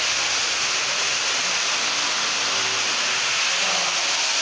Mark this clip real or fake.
real